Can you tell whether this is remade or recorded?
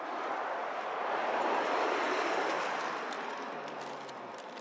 recorded